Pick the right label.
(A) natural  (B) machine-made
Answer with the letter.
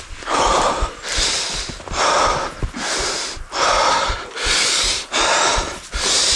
B